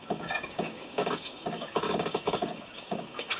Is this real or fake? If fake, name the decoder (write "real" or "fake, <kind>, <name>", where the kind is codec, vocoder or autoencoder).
fake, codec, DAC